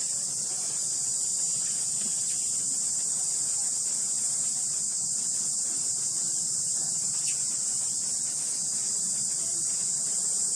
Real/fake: real